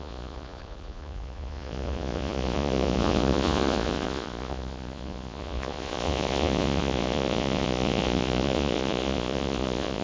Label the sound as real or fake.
fake